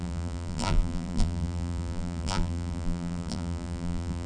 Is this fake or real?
fake